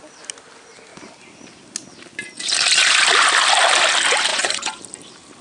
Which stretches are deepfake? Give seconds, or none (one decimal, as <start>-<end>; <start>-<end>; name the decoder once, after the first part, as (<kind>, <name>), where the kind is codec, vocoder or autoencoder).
4.3-4.8 (vocoder, Vocos)